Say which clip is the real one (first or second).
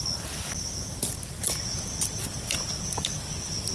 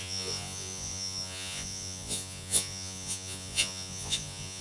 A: first